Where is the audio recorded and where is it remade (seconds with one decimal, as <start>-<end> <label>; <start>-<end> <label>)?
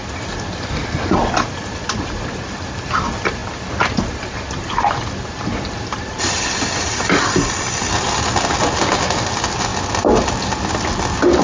0.0-11.4 recorded